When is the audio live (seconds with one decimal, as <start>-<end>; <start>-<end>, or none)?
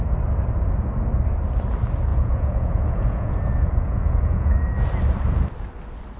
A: 0.0-2.1; 4.5-6.2